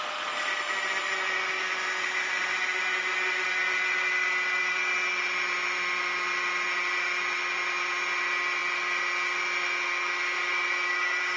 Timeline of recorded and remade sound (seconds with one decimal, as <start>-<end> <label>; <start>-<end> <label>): 0.0-11.4 recorded